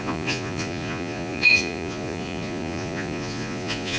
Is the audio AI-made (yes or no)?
yes